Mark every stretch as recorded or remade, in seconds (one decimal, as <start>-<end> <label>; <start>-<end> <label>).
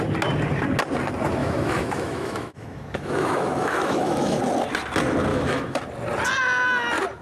0.0-1.4 recorded; 1.4-4.4 remade; 4.4-5.3 recorded; 5.3-5.8 remade; 5.8-7.2 recorded